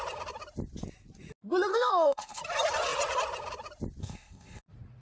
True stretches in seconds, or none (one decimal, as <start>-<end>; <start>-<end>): 0.0-1.7; 2.4-4.0; 4.6-5.0